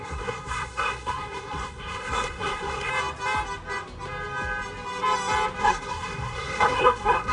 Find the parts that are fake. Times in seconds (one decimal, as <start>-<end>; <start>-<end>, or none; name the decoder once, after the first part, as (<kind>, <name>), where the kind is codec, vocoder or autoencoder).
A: 0.0-2.9 (codec, SNAC); 5.6-7.3